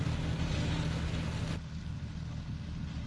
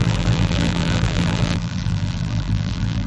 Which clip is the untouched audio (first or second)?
first